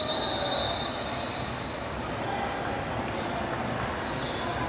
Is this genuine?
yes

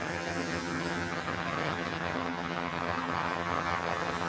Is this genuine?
no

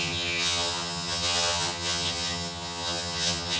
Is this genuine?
no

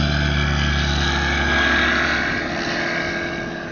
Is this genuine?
yes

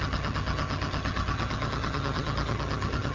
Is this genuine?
no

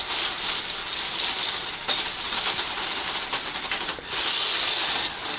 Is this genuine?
yes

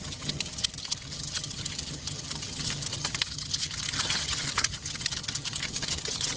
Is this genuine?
no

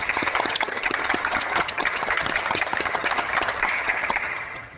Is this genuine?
no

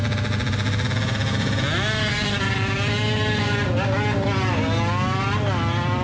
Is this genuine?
yes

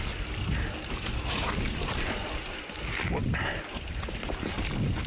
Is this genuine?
yes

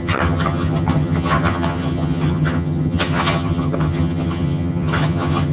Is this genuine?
no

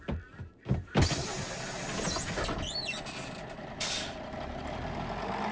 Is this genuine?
yes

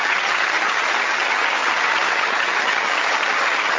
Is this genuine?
no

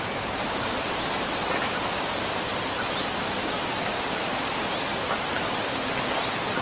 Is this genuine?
yes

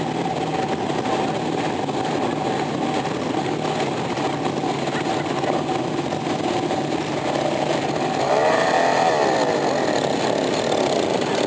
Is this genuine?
yes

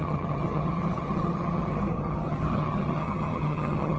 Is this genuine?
no